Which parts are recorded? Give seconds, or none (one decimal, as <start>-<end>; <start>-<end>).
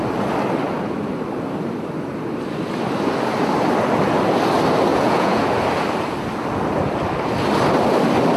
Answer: 0.0-4.9; 5.5-8.4